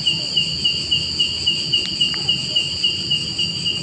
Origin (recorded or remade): recorded